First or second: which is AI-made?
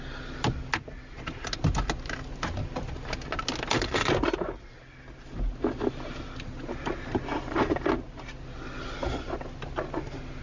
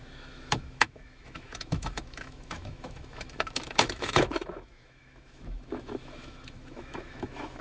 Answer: second